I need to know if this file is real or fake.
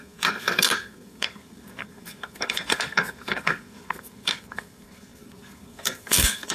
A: fake